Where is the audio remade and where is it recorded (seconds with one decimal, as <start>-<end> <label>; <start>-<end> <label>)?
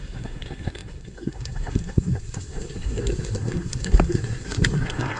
0.0-5.2 remade